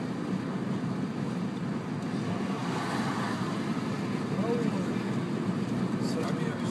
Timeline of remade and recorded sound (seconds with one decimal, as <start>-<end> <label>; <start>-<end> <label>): 0.0-6.7 recorded